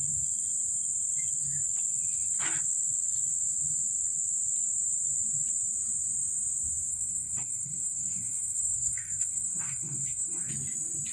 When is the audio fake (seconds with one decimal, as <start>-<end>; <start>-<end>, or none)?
6.9-10.5